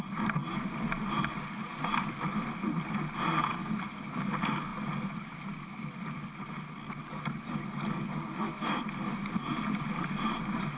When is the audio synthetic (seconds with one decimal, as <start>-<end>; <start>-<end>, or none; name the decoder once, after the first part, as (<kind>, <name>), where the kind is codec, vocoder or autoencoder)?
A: none